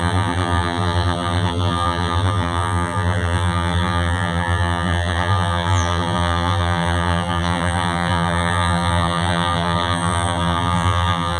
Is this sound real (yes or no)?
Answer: no